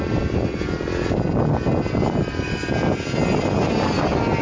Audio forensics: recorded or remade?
recorded